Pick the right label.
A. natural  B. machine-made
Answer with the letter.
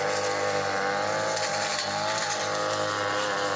A